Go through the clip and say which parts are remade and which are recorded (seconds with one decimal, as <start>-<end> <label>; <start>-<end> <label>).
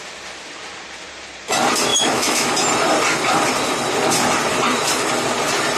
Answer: 0.0-1.9 recorded; 1.9-2.5 remade; 2.5-5.8 recorded